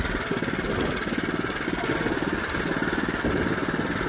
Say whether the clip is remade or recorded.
recorded